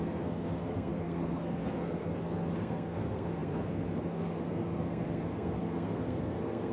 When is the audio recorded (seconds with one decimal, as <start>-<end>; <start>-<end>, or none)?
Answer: none